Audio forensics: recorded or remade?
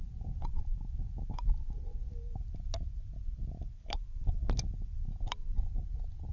recorded